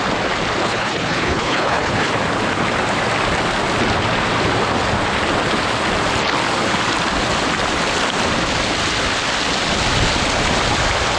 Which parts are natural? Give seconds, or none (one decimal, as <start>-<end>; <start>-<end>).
0.0-0.6; 2.1-11.2